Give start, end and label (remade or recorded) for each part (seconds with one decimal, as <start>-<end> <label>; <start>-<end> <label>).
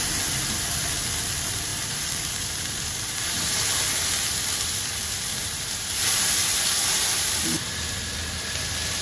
0.0-9.0 remade